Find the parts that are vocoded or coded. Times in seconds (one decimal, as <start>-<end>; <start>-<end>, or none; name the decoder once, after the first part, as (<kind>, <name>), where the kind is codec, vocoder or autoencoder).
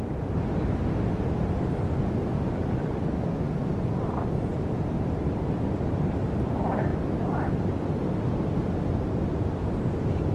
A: none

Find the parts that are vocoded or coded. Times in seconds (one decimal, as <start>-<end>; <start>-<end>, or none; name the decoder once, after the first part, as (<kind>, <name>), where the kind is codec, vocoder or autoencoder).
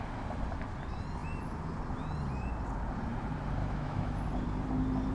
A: 3.6-4.2 (autoencoder, DAC-VAE)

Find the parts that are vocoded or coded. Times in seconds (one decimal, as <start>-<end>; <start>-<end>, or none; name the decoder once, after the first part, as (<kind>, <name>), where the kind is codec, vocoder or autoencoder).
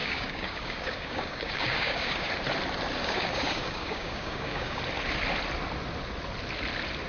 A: 0.0-2.3 (codec, DAC); 3.0-4.8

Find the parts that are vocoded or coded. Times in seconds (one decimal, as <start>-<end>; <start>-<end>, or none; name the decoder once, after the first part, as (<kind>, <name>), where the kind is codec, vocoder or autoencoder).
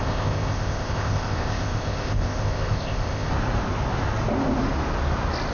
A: 0.0-3.3 (codec, ZipCodec)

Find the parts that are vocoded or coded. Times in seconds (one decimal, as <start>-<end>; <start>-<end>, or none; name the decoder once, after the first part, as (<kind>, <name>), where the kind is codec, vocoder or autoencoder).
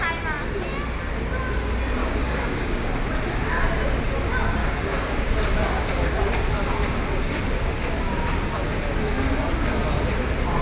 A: 2.0-2.9 (codec, DAC); 4.6-5.9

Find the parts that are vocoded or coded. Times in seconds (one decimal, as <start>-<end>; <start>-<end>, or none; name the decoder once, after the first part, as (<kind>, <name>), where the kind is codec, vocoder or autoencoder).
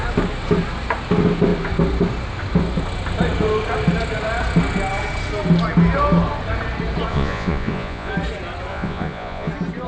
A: 7.1-8.1 (vocoder, Vocos); 8.7-9.5